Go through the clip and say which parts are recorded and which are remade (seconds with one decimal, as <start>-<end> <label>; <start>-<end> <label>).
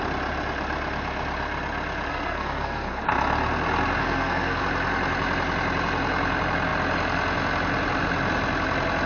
0.0-2.1 recorded; 2.1-3.0 remade; 3.0-4.0 recorded; 4.0-4.6 remade; 4.6-9.1 recorded